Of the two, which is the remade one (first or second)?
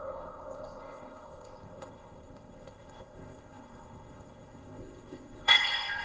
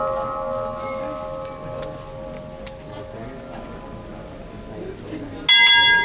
first